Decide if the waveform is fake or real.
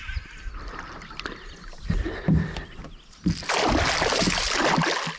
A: real